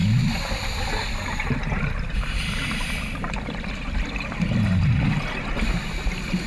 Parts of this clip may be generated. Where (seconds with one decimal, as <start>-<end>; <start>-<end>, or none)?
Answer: none